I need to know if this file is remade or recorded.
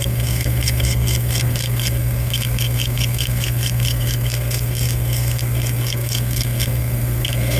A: remade